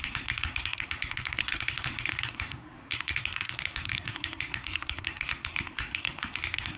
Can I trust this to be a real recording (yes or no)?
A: no